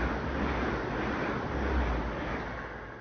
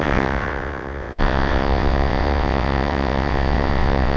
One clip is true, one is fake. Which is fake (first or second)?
second